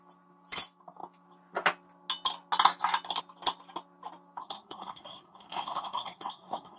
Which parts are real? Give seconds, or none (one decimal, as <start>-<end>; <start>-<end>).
0.0-4.4